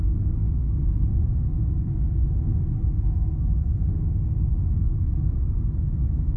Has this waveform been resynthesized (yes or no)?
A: yes